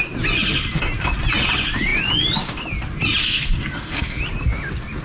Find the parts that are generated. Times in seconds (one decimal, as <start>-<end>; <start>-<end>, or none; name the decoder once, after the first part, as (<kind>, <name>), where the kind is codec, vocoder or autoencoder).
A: 3.2-4.2 (codec, SNAC)

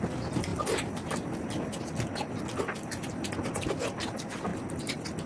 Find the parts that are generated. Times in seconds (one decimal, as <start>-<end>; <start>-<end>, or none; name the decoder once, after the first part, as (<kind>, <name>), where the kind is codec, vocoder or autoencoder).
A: none

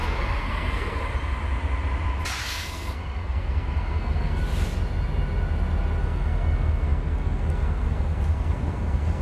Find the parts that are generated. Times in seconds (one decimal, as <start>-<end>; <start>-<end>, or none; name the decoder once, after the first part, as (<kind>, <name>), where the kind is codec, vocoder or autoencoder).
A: 0.0-1.0 (codec, SNAC); 2.4-4.4; 6.0-9.2

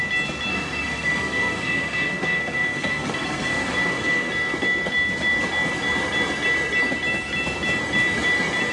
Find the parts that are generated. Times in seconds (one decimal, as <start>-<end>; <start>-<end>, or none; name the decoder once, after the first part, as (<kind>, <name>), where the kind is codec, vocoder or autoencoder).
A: 0.5-4.3 (codec, SNAC)

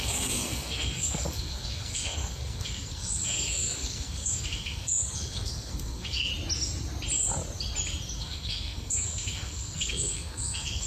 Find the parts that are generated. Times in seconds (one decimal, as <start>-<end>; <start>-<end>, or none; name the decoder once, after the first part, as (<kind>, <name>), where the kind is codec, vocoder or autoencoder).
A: 0.0-6.3 (codec, SNAC); 8.2-10.9

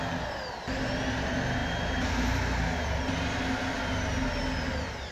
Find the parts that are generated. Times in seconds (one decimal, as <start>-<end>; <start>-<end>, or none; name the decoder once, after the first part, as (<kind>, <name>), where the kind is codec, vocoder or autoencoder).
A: none

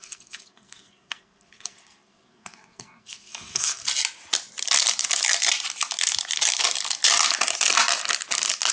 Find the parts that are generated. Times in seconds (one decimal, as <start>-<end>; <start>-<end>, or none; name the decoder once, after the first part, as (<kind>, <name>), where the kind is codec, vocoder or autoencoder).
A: 0.0-3.8 (codec, SNAC)

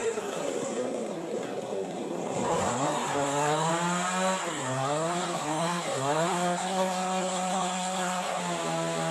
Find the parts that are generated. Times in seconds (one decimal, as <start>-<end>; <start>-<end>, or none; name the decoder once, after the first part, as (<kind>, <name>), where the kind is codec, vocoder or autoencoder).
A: 0.0-3.7 (codec, SNAC); 4.4-8.4